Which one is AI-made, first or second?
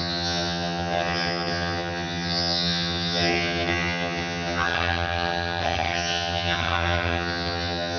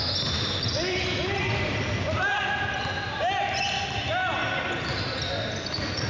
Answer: first